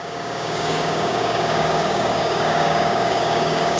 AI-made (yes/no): yes